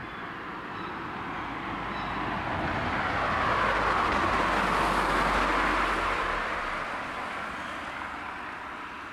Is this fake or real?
real